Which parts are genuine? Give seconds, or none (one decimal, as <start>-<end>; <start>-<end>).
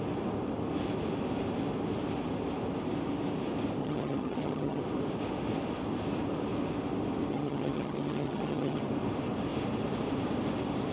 0.0-3.8; 4.8-7.3; 8.8-10.9